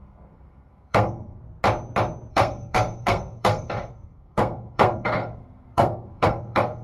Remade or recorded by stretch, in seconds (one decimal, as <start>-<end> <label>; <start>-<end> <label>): 0.0-1.4 remade; 1.4-2.3 recorded; 2.3-6.8 remade